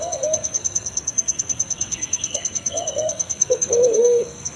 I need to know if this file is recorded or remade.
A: remade